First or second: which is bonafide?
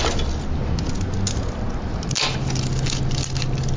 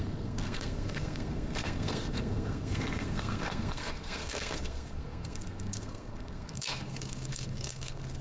first